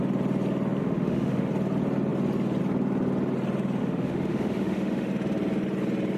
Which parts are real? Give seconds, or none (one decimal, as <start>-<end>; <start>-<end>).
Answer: 0.0-0.8; 1.5-3.8; 5.1-6.2